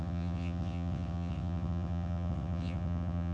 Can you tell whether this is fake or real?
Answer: fake